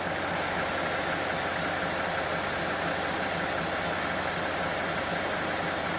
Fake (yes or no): no